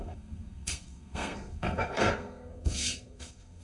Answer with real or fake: fake